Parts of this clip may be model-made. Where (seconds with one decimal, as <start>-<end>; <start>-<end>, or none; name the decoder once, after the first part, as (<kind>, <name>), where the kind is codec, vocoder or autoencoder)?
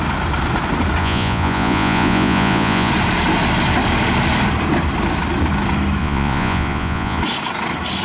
1.0-2.9 (vocoder, Vocos); 6.0-7.2